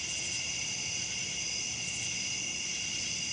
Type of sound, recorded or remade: recorded